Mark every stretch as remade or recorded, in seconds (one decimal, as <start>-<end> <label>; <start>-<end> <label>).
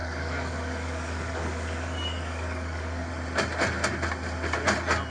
0.0-3.1 remade; 3.1-5.1 recorded